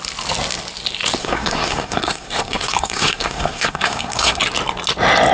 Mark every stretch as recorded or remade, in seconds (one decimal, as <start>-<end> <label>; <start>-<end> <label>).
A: 0.0-1.2 recorded; 1.2-4.4 remade; 4.4-5.3 recorded